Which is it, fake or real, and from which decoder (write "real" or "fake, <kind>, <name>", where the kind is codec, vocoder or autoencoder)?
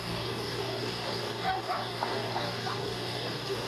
fake, codec, DAC